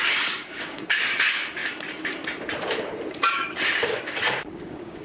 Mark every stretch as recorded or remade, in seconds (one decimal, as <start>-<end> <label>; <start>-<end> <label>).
0.0-1.6 remade; 1.6-3.2 recorded; 3.2-5.0 remade